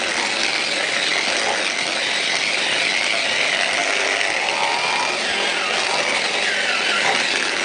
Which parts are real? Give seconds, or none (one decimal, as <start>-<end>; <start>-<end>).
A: 0.0-7.6